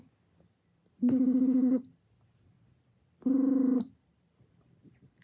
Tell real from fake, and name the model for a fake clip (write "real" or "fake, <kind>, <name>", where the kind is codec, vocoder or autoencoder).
fake, vocoder, BigVGAN v2